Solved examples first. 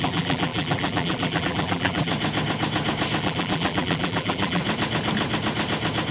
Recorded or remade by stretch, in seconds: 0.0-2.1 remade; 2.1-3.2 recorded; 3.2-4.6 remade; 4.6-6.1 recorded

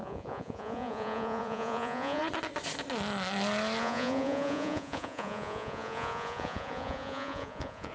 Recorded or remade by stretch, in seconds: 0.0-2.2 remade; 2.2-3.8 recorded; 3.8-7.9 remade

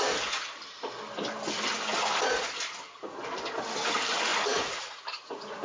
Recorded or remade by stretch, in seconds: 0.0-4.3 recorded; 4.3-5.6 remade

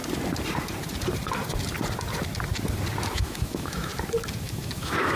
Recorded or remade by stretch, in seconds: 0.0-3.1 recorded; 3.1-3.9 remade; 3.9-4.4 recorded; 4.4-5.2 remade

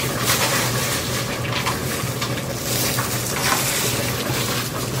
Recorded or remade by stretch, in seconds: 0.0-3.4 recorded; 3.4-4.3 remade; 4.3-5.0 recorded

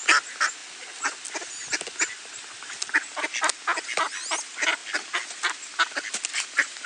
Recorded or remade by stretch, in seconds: 0.0-6.9 recorded

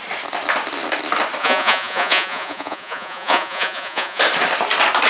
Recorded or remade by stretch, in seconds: 0.0-1.4 recorded; 1.4-4.2 remade; 4.2-5.1 recorded

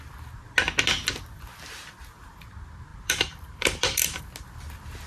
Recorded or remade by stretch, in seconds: 0.0-2.9 recorded; 2.9-4.2 remade; 4.2-5.1 recorded